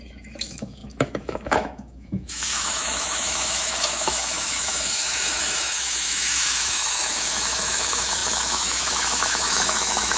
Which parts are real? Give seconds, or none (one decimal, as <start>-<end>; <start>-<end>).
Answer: none